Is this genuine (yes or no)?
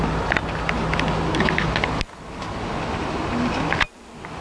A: yes